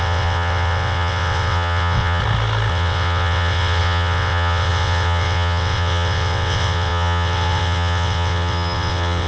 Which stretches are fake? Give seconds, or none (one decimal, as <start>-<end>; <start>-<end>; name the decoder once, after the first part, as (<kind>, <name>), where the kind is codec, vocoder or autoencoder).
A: 0.0-2.2 (vocoder, WaveNeXt); 2.7-9.3